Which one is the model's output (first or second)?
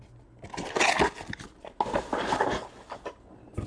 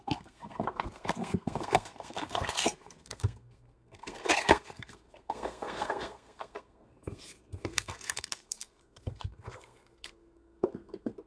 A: second